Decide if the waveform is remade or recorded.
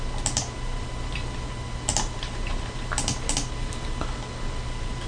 recorded